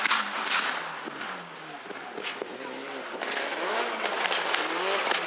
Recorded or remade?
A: recorded